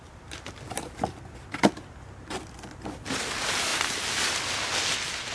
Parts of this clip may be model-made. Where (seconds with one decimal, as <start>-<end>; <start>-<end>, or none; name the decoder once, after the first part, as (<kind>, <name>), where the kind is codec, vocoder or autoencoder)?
none